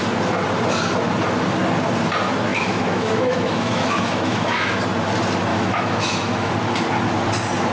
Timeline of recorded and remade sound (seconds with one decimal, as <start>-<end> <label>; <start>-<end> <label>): 0.0-2.5 recorded; 2.5-4.8 remade; 4.8-5.5 recorded; 5.5-6.5 remade; 6.5-7.7 recorded